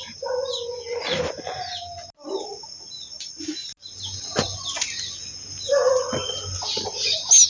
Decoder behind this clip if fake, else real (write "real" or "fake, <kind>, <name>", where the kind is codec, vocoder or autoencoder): real